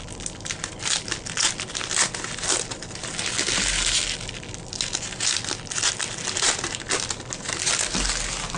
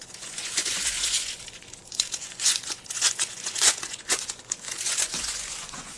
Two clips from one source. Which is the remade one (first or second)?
second